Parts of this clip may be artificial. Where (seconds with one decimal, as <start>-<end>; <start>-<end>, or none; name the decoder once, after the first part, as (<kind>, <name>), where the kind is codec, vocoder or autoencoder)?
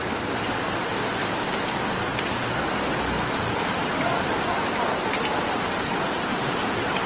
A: 1.2-1.9 (vocoder, BigVGAN v2); 3.9-7.1